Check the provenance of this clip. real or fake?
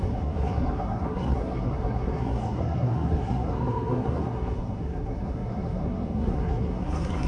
fake